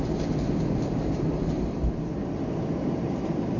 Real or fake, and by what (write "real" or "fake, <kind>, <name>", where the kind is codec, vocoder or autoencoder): fake, vocoder, BigVGAN v2